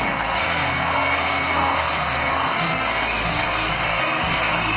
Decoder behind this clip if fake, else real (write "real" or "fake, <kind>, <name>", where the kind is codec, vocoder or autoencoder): fake, codec, SNAC